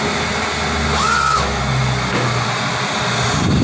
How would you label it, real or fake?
real